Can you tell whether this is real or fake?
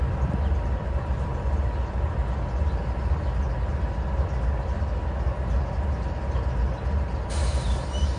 real